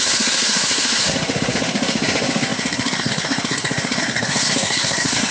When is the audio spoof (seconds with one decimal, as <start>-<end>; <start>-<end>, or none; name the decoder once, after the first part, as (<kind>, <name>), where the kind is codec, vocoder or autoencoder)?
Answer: 0.0-5.3 (codec, SNAC)